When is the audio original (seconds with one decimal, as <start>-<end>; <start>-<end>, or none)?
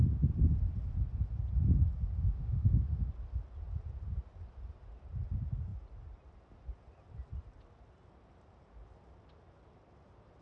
0.0-2.2; 3.1-10.4